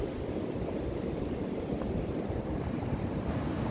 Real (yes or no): yes